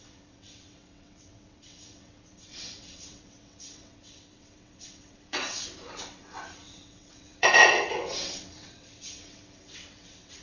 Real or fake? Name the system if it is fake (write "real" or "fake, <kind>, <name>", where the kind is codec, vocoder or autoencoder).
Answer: fake, vocoder, WaveNeXt